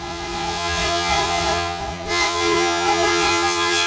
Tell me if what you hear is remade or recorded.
remade